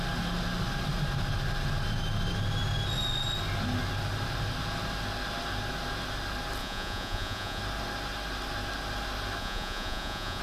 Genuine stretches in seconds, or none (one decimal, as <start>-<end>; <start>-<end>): 0.0-6.6; 7.6-9.4